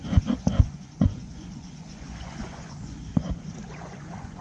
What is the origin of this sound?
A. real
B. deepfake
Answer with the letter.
B